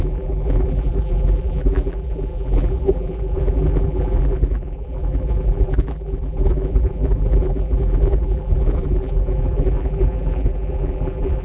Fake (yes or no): yes